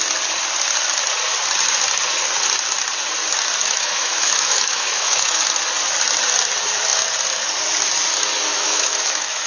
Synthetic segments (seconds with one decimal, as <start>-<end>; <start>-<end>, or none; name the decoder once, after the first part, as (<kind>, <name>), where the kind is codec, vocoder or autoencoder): 3.6-5.4 (autoencoder, DAC-VAE); 8.5-9.5